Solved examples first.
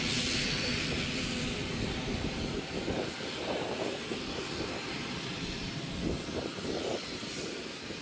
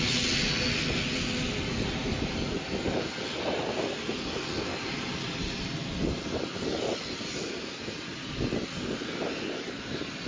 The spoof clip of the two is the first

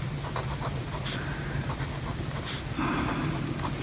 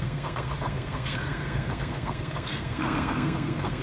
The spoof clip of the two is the second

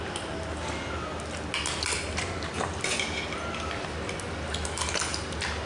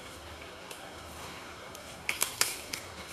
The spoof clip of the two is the second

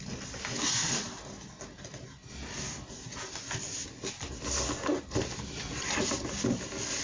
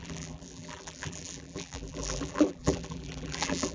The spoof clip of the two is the second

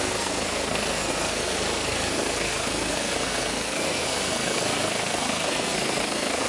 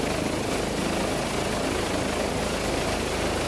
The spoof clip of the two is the first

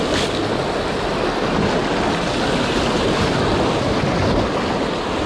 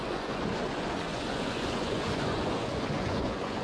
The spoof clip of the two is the second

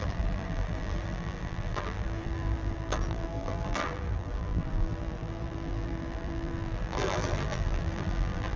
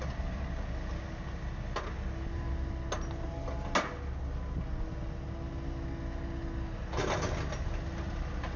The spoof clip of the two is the first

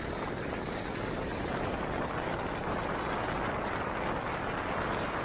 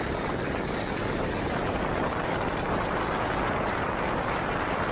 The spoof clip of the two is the second